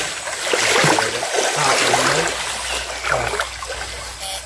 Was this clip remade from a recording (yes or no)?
no